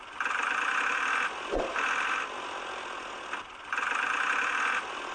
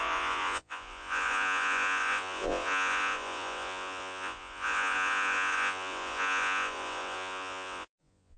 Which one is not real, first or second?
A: second